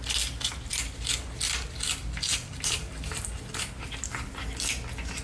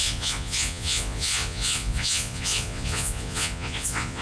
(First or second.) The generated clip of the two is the second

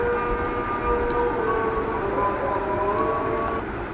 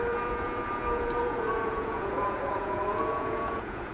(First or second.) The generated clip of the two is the second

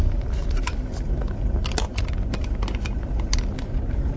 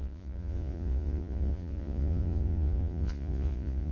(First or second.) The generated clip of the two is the second